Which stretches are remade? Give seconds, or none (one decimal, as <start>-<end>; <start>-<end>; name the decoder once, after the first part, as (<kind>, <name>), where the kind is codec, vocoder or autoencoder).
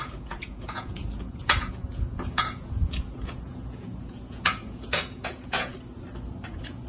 0.0-5.7 (vocoder, Vocos); 6.5-6.9